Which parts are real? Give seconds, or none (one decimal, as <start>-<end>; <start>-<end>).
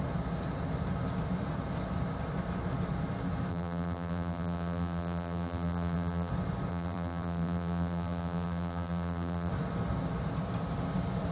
0.0-3.5; 6.3-6.7; 9.5-11.3